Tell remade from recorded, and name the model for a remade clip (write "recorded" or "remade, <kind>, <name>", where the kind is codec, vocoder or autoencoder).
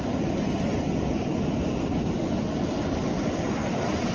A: recorded